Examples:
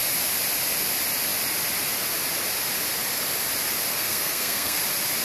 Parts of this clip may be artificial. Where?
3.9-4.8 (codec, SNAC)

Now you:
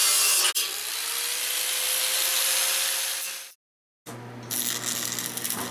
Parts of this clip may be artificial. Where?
none

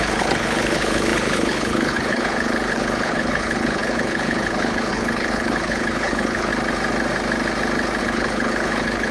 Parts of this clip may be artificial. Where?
0.0-6.5 (codec, HILCodec); 8.0-9.1

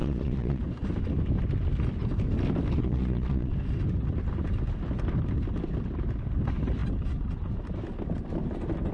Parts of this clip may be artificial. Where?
0.0-0.6 (vocoder, Vocos); 2.8-3.5

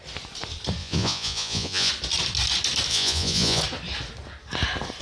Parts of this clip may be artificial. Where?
0.8-1.9 (vocoder, Vocos); 2.9-3.6

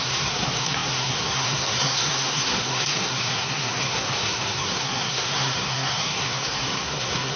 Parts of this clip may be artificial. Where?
0.0-7.4 (codec, SNAC)

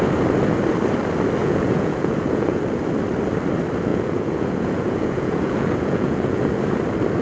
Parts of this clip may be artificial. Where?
1.4-2.6 (vocoder, Vocos); 3.9-6.4

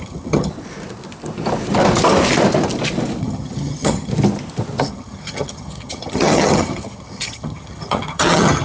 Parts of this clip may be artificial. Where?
0.0-0.5 (vocoder, HiFi-GAN); 3.2-4.1; 4.8-8.6